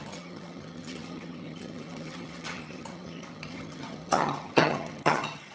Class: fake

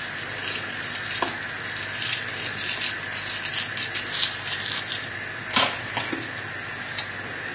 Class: real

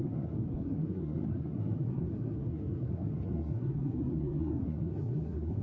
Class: fake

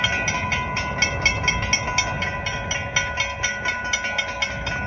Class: real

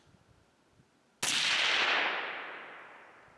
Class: real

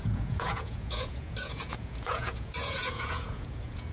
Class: fake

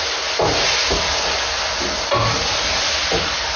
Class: real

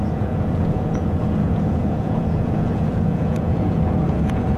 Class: fake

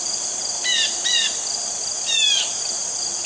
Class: real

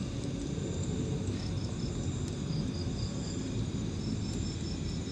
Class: real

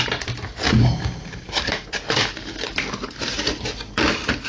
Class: fake